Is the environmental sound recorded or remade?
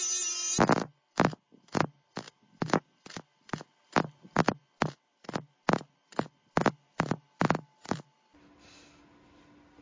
recorded